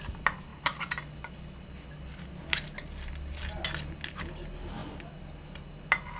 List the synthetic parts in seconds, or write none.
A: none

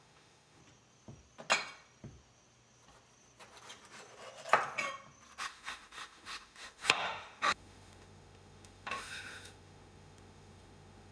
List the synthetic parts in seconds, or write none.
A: 0.0-0.6 (autoencoder, DAC-VAE); 5.4-11.1

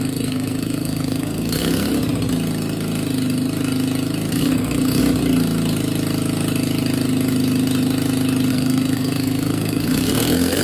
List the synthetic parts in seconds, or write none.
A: 0.0-1.9 (codec, SNAC); 4.3-5.0; 8.5-10.6